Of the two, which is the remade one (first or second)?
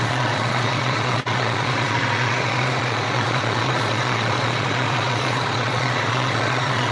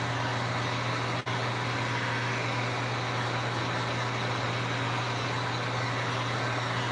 first